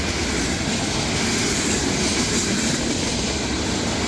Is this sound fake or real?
real